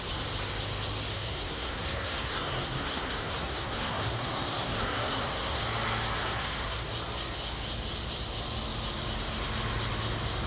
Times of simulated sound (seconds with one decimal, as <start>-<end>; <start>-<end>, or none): 1.1-5.6; 6.2-6.9